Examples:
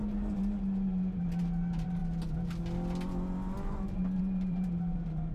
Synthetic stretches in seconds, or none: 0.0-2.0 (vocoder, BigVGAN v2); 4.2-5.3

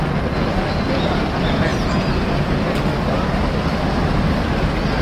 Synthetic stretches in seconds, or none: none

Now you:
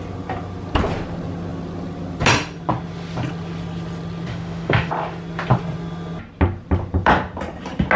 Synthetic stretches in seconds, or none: 4.3-4.9 (autoencoder, DAC-VAE)